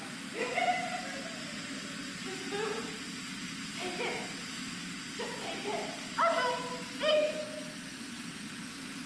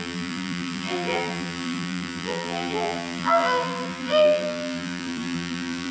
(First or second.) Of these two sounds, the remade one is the second